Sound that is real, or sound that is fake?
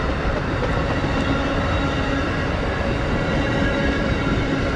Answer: real